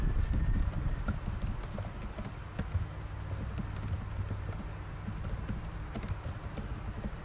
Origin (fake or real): real